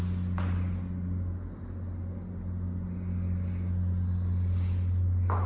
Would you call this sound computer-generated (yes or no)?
no